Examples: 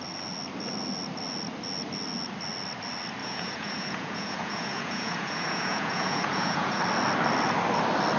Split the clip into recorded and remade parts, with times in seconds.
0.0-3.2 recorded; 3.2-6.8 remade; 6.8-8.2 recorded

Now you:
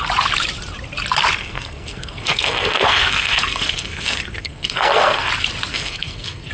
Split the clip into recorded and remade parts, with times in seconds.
0.0-1.4 recorded; 1.4-5.3 remade; 5.3-5.7 recorded; 5.7-6.5 remade

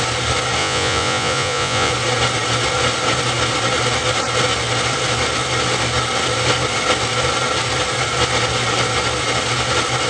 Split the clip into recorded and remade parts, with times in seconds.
0.0-0.6 recorded; 0.6-1.9 remade; 1.9-10.1 recorded

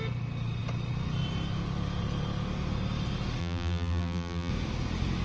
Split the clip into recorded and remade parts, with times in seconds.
0.0-3.4 recorded; 3.4-4.5 remade; 4.5-5.2 recorded

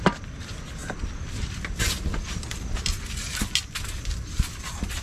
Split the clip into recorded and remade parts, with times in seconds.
0.0-5.0 recorded

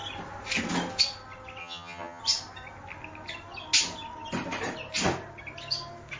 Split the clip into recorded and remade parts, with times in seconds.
0.0-1.6 recorded; 1.6-2.2 remade; 2.2-6.2 recorded